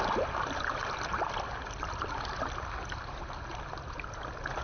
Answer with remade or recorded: recorded